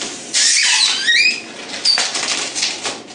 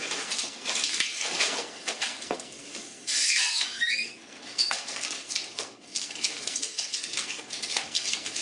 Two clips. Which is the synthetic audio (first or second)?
second